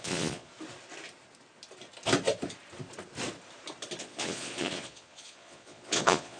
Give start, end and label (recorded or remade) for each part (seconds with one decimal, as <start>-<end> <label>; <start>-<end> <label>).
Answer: 0.0-0.5 remade; 0.5-4.0 recorded; 4.0-6.4 remade